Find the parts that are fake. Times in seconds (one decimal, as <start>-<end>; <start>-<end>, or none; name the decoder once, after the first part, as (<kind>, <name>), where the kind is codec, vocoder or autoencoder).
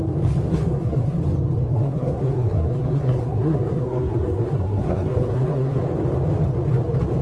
0.5-1.2 (codec, SNAC); 1.7-5.8